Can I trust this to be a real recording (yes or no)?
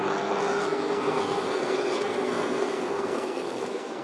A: no